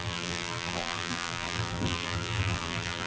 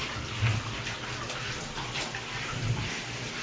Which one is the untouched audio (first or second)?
second